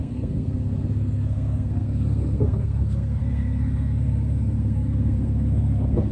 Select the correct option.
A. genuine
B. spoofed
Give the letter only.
B